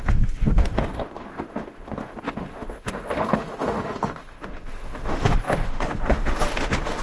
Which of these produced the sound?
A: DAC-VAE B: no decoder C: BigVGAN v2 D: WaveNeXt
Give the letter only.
A